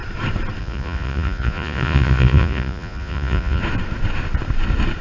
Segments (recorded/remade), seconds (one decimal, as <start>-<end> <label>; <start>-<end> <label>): 0.0-0.6 recorded; 0.6-3.6 remade; 3.6-5.0 recorded